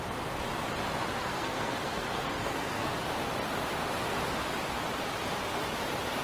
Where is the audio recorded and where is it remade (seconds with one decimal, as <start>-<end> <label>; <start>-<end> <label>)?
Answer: 0.0-1.2 recorded; 1.2-2.9 remade; 2.9-6.2 recorded